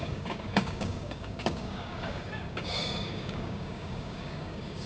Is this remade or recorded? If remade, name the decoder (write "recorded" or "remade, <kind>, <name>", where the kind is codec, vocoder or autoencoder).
remade, codec, DAC